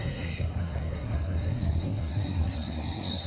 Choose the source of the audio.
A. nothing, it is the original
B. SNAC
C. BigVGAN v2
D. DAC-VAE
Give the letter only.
B